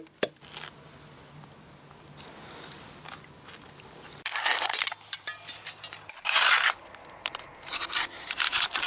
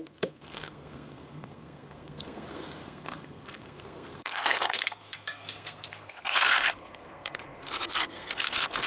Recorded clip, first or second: first